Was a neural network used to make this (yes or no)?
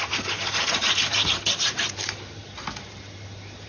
no